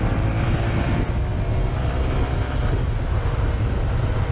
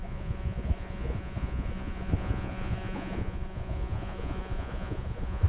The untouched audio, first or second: first